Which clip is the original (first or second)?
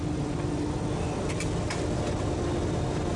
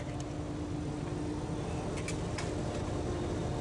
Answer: second